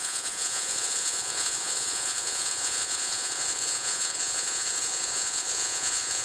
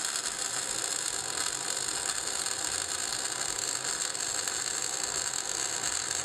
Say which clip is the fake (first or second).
first